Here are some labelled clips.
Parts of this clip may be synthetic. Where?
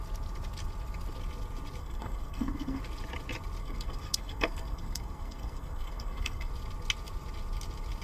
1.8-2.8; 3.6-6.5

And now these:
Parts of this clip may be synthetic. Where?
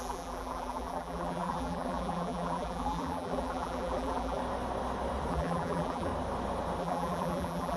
0.0-4.4; 5.3-6.1; 6.8-7.8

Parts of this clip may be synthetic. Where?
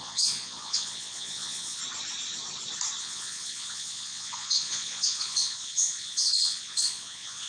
0.0-1.8; 3.0-7.5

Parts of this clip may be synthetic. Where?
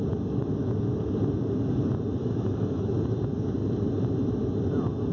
2.2-2.9